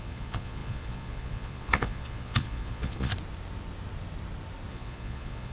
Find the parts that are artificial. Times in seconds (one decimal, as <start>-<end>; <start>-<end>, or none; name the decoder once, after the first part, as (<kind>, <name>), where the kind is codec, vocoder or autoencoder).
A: 0.0-3.1 (vocoder, Vocos); 4.7-5.5